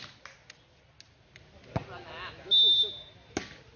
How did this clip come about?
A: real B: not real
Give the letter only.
A